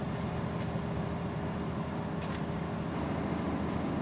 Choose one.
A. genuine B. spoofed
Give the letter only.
A